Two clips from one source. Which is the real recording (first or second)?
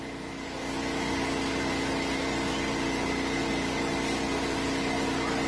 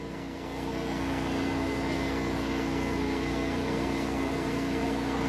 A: first